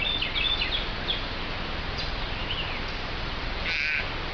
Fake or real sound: real